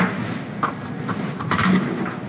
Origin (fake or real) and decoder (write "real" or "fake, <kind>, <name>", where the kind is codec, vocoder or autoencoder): real